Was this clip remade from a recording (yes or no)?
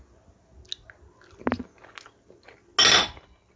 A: no